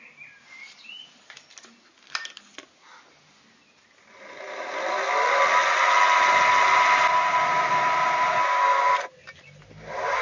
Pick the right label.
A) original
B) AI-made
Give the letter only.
A